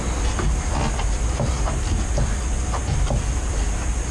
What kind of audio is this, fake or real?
real